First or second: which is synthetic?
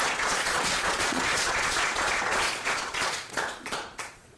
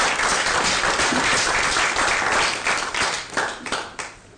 first